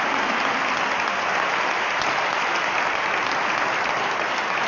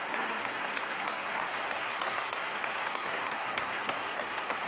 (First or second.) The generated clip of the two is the second